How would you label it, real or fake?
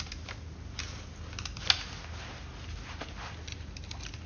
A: real